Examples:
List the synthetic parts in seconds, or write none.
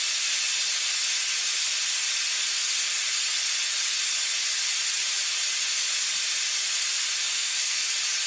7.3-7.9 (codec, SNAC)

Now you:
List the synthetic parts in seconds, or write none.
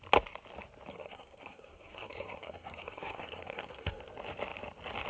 0.9-4.0 (codec, SNAC)